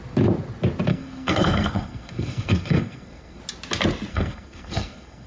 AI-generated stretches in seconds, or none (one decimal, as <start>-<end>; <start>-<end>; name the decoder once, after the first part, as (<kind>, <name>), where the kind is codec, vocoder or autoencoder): 0.9-3.4 (codec, SNAC); 4.1-5.3